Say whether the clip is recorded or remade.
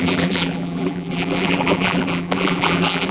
remade